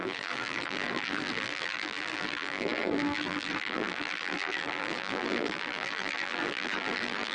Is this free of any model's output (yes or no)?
no